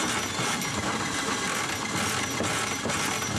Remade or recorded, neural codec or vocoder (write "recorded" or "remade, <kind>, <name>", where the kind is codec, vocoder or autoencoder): recorded